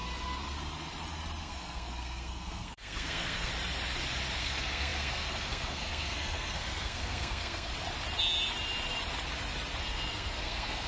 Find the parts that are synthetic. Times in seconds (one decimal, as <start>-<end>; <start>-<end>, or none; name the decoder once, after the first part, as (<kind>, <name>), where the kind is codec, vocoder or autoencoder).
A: 1.4-3.5 (codec, SNAC); 4.4-7.7; 9.8-10.9